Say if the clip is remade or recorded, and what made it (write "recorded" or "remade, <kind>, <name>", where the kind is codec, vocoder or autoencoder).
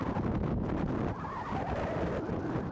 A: recorded